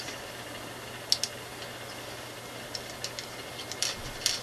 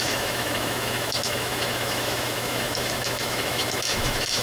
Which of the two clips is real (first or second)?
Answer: first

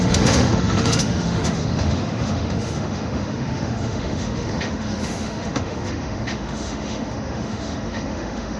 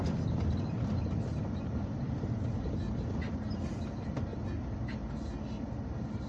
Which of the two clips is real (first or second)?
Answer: second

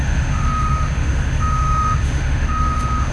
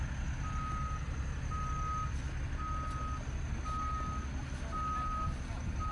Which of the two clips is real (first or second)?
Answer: second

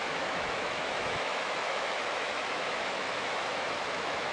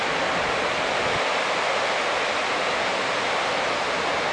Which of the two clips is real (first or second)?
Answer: second